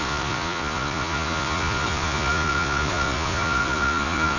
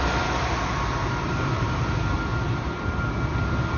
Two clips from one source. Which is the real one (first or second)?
second